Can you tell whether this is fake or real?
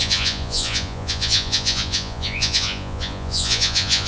fake